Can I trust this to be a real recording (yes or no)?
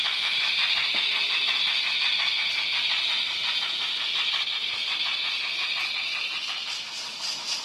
yes